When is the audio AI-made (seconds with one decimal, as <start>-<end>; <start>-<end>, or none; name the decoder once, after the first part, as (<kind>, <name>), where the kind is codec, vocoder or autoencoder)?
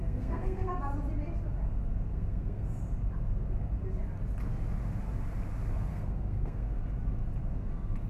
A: 0.0-0.7 (codec, SNAC); 2.1-2.8; 5.9-6.8